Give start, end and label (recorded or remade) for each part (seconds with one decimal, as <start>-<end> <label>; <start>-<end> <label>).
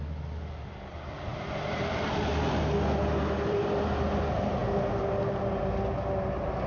0.0-6.7 recorded